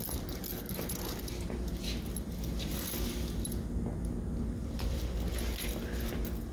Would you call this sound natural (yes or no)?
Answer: yes